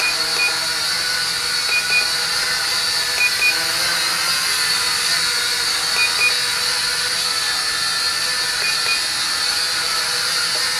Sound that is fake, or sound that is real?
real